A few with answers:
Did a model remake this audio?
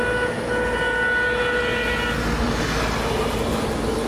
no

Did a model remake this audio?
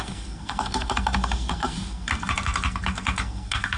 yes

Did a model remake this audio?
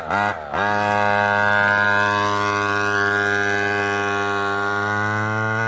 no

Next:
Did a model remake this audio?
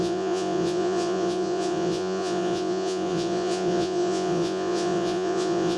yes